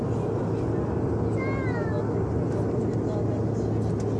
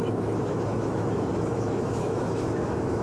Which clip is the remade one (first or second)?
second